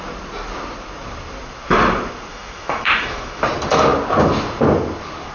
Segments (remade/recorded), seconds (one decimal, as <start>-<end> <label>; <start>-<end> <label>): 0.0-2.3 recorded; 2.3-3.4 remade; 3.4-5.3 recorded